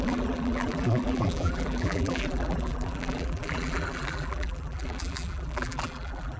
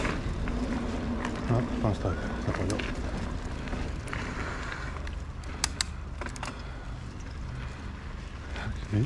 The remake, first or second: first